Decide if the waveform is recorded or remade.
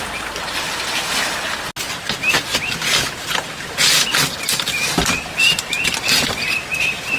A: recorded